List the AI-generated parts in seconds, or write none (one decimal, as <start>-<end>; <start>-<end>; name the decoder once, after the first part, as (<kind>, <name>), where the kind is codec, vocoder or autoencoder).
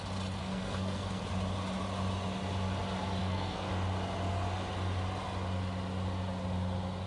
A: 0.4-1.2 (codec, SNAC); 3.2-3.7